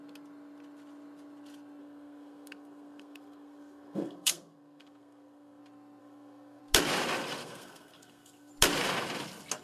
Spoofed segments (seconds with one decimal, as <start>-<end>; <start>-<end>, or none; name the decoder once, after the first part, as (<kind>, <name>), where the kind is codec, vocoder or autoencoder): 1.8-5.6 (codec, SNAC); 6.0-6.6; 7.4-8.5